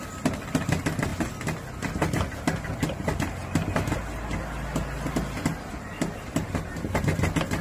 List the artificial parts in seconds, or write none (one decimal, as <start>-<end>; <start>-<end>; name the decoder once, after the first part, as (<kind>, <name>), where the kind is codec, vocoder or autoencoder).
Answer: none